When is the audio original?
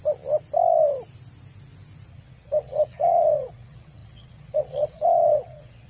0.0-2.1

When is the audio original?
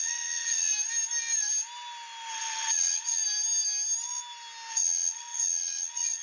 0.7-2.3; 3.2-4.7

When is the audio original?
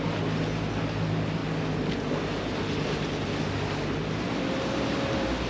0.0-5.5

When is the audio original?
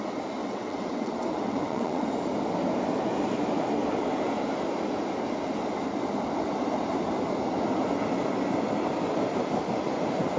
0.0-0.4; 2.1-10.4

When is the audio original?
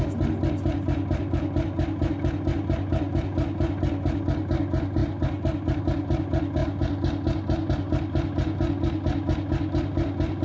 0.0-10.4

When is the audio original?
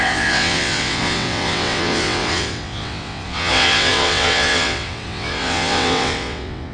none